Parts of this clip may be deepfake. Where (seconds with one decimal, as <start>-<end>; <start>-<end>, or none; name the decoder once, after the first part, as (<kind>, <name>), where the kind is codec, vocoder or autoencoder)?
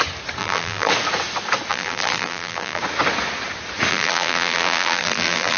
0.4-0.9 (vocoder, BigVGAN v2); 1.7-2.8; 3.9-5.6